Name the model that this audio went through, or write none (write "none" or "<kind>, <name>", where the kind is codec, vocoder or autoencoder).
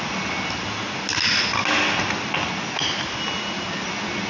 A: none